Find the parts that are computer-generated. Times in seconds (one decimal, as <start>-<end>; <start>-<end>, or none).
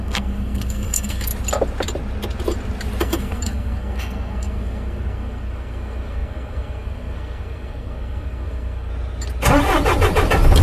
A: 0.0-1.3; 3.0-8.9